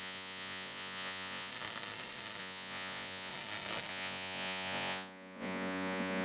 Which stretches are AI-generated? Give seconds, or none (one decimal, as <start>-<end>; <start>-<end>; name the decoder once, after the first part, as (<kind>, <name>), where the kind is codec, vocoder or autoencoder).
0.0-1.5 (vocoder, Vocos); 2.4-3.3; 3.9-6.2